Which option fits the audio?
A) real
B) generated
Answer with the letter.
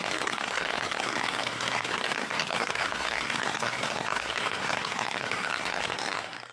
B